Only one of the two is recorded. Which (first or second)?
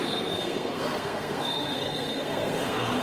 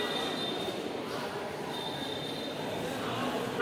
second